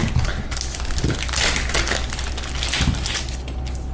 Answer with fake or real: real